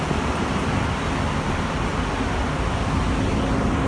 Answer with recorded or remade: recorded